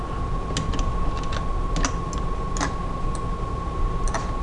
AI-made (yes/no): no